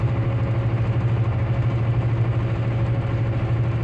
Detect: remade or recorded recorded